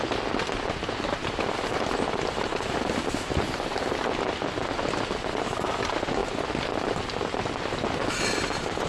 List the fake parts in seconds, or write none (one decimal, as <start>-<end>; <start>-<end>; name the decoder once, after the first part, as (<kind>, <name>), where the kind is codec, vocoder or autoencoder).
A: 1.2-4.4 (vocoder, BigVGAN v2)